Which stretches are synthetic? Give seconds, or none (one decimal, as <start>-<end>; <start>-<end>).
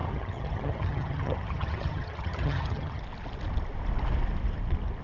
0.0-3.0